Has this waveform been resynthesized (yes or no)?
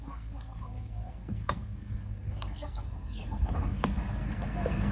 yes